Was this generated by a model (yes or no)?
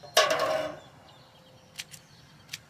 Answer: no